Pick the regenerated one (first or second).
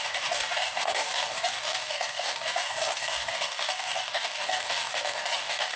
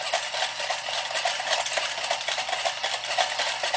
first